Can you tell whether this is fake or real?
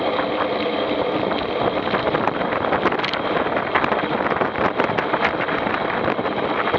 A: real